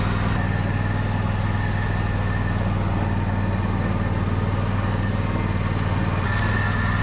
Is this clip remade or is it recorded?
recorded